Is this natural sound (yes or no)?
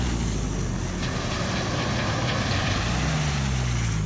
yes